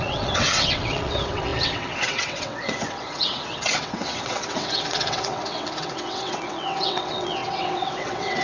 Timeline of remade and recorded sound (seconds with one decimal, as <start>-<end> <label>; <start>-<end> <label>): 0.0-8.4 remade